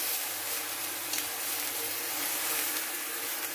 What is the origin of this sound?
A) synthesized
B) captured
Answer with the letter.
A